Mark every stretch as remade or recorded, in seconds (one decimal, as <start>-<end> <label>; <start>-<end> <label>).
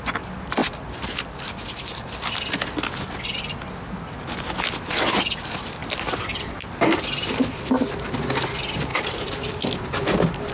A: 0.0-5.8 recorded; 5.8-6.6 remade; 6.6-8.9 recorded; 8.9-10.5 remade